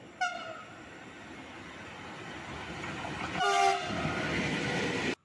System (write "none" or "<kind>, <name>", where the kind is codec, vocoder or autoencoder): none